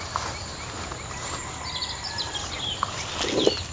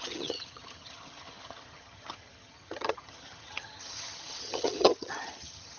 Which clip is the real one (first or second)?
first